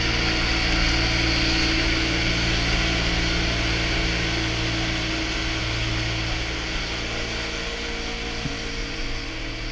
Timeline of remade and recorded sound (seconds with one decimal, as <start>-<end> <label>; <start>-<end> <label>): 0.0-9.7 recorded